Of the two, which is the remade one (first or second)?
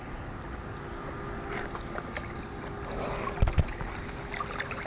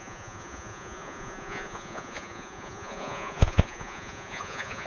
second